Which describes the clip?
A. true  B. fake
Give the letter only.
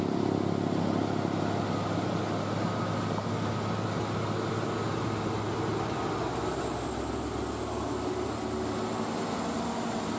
A